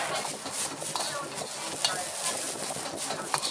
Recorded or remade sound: recorded